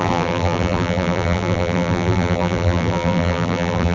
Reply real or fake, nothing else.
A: fake